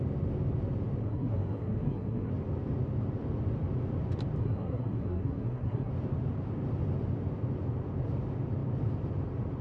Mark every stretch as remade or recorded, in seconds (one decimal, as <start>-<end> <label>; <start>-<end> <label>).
0.0-1.0 recorded; 1.0-2.3 remade; 2.3-4.4 recorded; 4.4-5.9 remade; 5.9-9.6 recorded